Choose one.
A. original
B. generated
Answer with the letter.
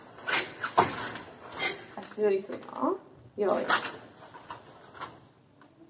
A